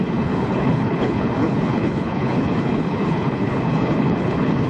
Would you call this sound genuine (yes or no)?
no